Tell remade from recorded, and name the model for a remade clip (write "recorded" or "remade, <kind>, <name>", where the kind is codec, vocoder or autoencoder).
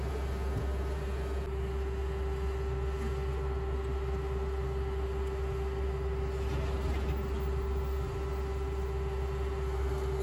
recorded